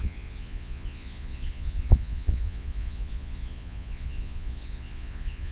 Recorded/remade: remade